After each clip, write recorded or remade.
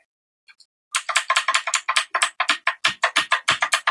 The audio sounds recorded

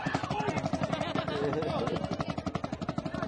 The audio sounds recorded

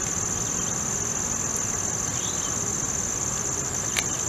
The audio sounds recorded